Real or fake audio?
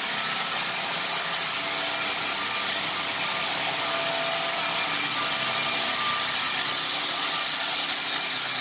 real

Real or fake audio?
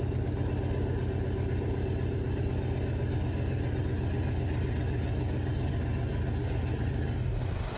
real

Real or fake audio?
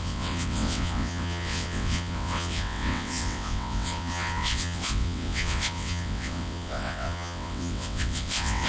fake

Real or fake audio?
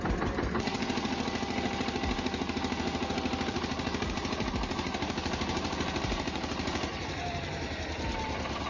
fake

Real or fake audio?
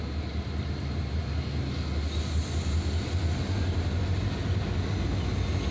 real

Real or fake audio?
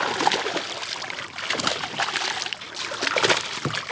real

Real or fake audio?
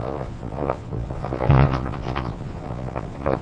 fake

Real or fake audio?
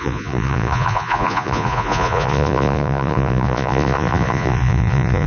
fake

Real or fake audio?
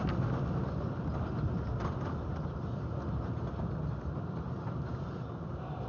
real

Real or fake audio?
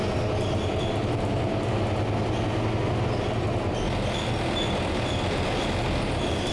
real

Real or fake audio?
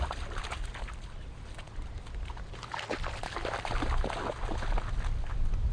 real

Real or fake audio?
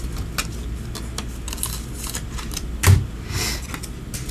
real